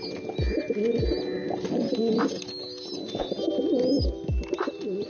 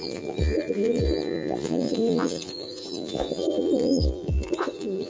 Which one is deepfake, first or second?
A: second